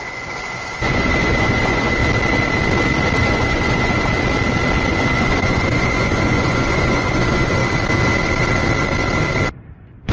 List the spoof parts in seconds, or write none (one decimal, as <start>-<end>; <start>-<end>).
0.0-2.0; 3.2-4.1; 4.9-7.6; 9.7-10.1

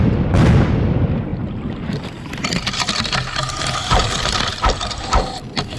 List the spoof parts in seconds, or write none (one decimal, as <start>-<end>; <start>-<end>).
none

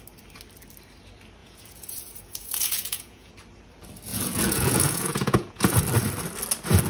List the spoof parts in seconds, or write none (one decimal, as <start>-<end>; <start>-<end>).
1.4-3.3; 4.1-5.8

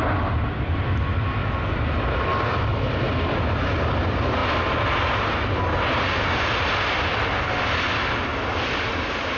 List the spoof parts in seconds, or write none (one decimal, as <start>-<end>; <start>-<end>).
none

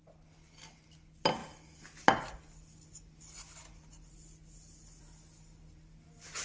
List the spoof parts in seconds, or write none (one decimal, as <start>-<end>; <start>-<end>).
none

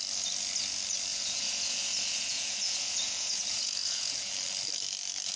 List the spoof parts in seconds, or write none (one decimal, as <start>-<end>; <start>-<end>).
1.1-4.3